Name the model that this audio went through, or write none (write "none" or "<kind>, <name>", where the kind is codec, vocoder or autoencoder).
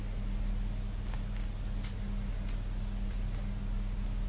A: none